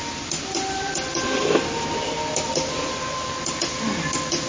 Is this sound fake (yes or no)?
no